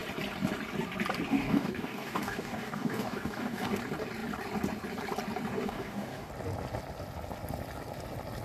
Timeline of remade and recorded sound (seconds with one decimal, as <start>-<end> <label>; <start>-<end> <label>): 0.0-1.3 recorded; 1.3-3.8 remade; 3.8-5.5 recorded; 5.5-6.3 remade; 6.3-8.4 recorded